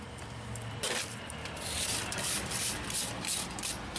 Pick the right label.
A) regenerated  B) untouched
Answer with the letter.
A